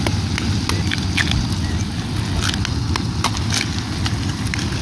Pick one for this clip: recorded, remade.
recorded